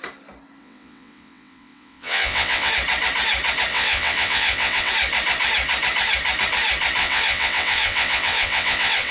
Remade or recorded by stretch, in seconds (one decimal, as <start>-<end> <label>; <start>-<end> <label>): 0.0-0.6 recorded; 0.6-2.7 remade; 2.7-3.7 recorded; 3.7-4.9 remade; 4.9-7.0 recorded; 7.0-9.1 remade